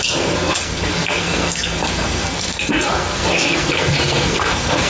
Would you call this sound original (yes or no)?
no